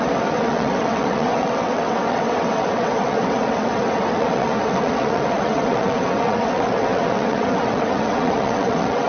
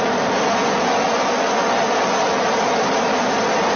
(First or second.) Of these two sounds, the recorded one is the second